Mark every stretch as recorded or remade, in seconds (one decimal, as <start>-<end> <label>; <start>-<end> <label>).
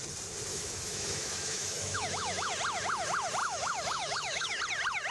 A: 0.0-0.5 recorded; 0.5-2.5 remade; 2.5-3.4 recorded; 3.4-4.6 remade; 4.6-5.1 recorded